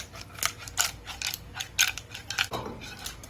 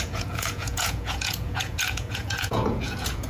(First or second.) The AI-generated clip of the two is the second